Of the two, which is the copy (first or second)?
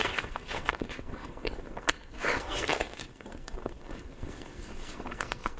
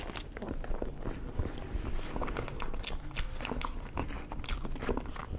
first